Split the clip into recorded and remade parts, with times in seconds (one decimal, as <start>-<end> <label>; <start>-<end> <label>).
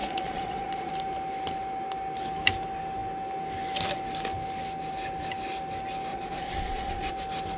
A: 0.0-0.9 remade; 0.9-6.1 recorded; 6.1-7.1 remade; 7.1-7.6 recorded